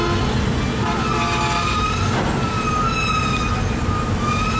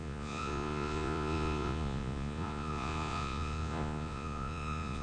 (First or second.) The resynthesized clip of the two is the second